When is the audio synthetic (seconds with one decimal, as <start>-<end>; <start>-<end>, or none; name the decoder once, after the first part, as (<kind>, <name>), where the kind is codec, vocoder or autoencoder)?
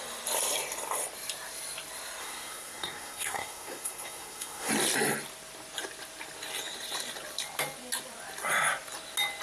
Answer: 2.2-4.7 (codec, SNAC)